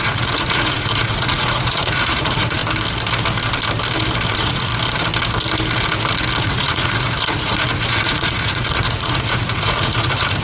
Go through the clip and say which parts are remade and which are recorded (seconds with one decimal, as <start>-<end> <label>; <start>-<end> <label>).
0.0-2.6 remade; 2.6-4.3 recorded; 4.3-4.7 remade; 4.7-6.4 recorded; 6.4-10.4 remade